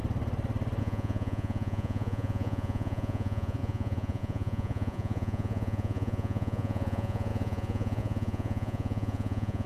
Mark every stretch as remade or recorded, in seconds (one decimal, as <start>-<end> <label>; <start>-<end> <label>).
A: 0.0-0.8 recorded; 0.8-9.7 remade